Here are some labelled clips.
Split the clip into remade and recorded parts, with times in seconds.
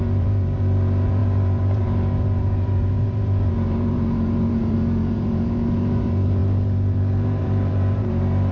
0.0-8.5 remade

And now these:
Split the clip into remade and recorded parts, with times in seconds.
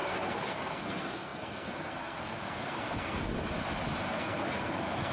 0.0-3.3 remade; 3.3-4.0 recorded; 4.0-5.1 remade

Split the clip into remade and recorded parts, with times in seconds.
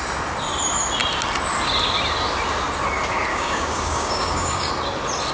0.0-3.3 recorded; 3.3-4.7 remade; 4.7-5.3 recorded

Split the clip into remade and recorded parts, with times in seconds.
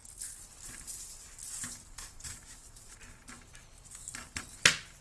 0.0-5.0 recorded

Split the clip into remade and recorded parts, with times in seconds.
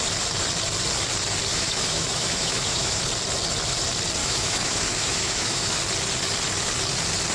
0.0-1.5 recorded; 1.5-3.0 remade; 3.0-4.2 recorded; 4.2-5.8 remade; 5.8-7.3 recorded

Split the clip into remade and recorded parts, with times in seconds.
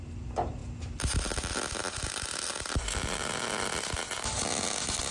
0.0-5.1 recorded